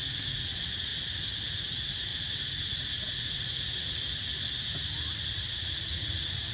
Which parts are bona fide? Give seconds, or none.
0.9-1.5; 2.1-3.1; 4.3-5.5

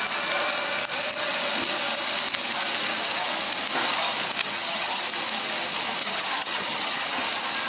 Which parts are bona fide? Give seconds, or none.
0.0-4.4; 5.0-6.0; 7.2-7.7

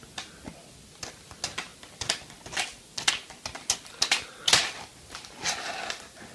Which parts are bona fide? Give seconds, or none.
0.0-6.3

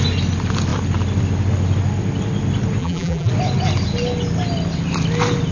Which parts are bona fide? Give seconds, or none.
0.0-2.8; 3.3-5.5